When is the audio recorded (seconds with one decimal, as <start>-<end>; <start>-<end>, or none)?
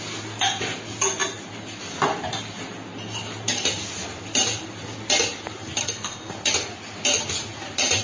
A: 0.0-5.8; 6.3-8.0